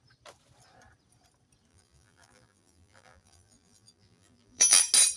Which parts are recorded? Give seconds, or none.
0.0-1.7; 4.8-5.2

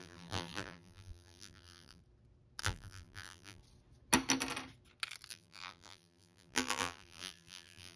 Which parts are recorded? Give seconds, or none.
2.0-2.6; 3.6-5.3